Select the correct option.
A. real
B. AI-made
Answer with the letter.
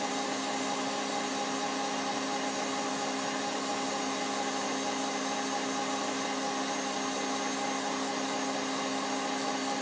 A